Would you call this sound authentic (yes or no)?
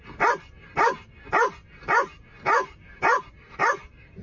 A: yes